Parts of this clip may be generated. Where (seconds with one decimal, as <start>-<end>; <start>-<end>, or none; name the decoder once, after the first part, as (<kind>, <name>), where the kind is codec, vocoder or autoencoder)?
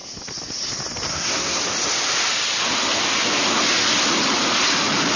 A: 1.1-1.6 (codec, SNAC)